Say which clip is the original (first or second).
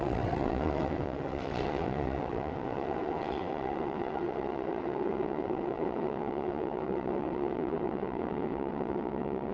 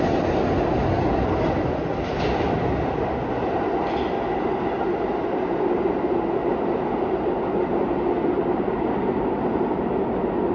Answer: second